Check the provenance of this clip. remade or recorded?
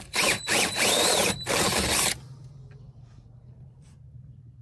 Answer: remade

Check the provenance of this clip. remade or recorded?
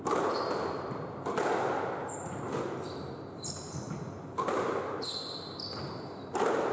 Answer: recorded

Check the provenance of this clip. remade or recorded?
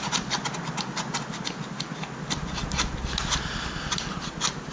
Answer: recorded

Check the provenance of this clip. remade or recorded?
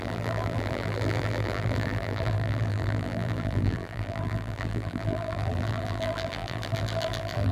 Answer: remade